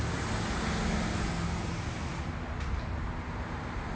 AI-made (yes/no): no